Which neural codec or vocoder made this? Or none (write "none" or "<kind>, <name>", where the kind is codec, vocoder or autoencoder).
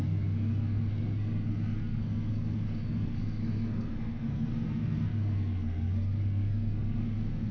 codec, SNAC